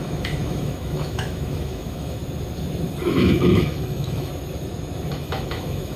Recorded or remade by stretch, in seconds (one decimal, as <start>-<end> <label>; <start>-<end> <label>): 0.0-2.2 remade; 2.2-3.0 recorded; 3.0-4.3 remade; 4.3-5.1 recorded; 5.1-6.0 remade